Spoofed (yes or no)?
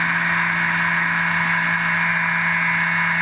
no